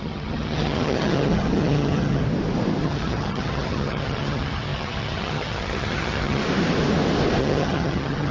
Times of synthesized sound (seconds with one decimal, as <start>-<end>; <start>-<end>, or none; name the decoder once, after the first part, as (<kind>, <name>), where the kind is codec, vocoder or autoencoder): 0.0-2.2 (vocoder, HiFi-GAN); 2.8-6.4; 7.4-8.3

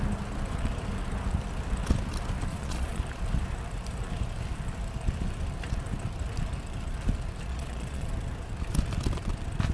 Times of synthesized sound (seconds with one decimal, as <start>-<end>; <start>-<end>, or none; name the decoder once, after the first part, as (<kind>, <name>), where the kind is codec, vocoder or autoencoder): 2.5-3.0 (vocoder, Vocos); 7.5-8.1

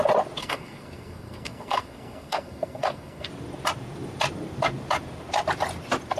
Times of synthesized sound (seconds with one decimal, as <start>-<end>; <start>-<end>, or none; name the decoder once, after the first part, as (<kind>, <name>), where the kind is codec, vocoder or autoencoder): 0.4-3.3 (codec, SNAC)